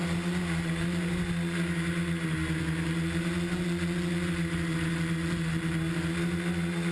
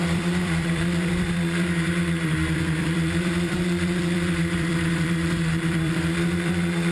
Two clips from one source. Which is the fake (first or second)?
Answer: second